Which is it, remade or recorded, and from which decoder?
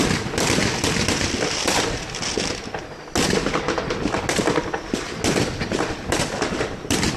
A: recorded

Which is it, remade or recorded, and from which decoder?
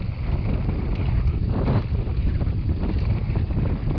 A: recorded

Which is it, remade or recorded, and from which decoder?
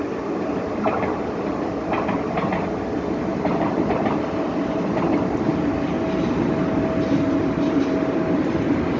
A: recorded